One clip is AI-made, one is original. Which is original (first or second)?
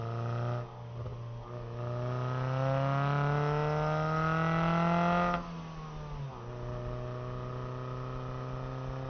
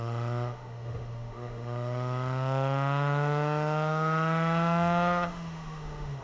first